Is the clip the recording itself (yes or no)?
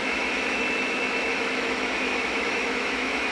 no